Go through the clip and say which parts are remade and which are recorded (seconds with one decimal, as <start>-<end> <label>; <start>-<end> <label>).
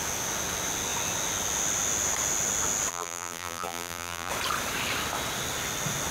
0.0-2.9 recorded; 2.9-4.3 remade; 4.3-6.1 recorded